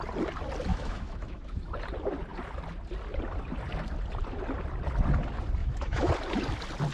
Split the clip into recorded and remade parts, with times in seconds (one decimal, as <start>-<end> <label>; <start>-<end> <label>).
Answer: 0.0-0.7 recorded; 0.7-1.7 remade; 1.7-5.6 recorded; 5.6-6.1 remade; 6.1-6.9 recorded